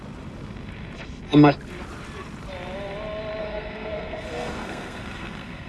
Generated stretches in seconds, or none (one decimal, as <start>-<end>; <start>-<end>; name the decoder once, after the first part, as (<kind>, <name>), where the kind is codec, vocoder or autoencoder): 3.4-5.7 (codec, SNAC)